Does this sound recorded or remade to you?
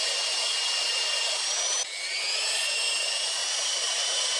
recorded